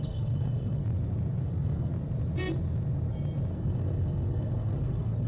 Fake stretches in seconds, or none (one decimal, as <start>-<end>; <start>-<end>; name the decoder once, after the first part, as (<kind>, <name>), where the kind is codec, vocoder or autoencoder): 0.0-0.8 (codec, SNAC); 1.4-1.9; 3.5-5.3